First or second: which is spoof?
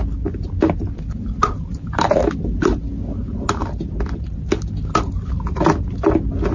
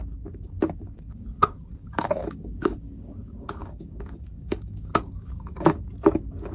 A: second